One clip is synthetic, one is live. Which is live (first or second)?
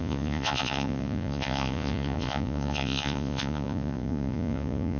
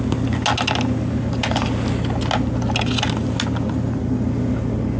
second